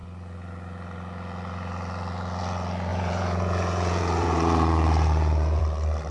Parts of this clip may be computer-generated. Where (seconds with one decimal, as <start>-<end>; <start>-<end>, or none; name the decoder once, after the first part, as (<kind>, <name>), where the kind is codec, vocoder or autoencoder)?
2.9-5.6 (vocoder, Vocos)